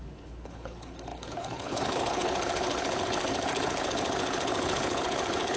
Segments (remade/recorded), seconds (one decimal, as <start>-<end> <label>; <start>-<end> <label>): 0.0-5.6 remade